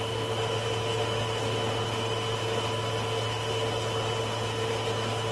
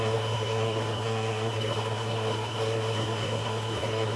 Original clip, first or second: first